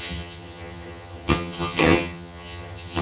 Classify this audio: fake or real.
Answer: fake